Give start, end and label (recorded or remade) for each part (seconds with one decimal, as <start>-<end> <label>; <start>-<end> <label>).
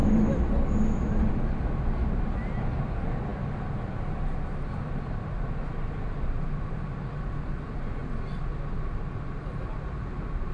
0.0-10.5 recorded